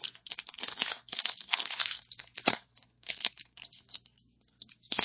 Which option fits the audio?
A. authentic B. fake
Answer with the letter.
B